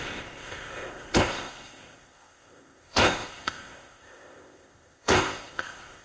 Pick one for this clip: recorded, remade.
remade